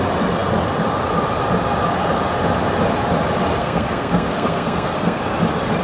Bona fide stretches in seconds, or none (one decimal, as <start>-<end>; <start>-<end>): 0.0-3.6; 5.2-5.8